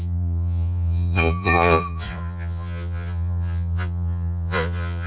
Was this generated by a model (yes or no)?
yes